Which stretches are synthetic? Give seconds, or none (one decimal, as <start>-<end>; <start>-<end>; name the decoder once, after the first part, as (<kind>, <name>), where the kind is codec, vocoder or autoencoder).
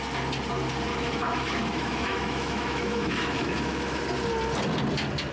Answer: 0.9-4.0 (autoencoder, DAC-VAE)